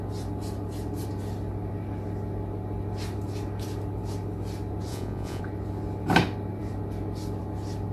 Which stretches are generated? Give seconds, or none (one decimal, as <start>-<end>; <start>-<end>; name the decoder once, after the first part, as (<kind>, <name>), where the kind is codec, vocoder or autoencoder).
4.9-5.4 (vocoder, Vocos)